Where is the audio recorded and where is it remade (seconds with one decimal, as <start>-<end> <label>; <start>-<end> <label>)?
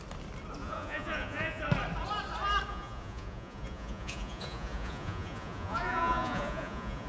0.0-0.6 recorded; 0.6-1.6 remade; 1.6-2.7 recorded; 2.7-7.1 remade